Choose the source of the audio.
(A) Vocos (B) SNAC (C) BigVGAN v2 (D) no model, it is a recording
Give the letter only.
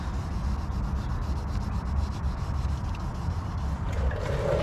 D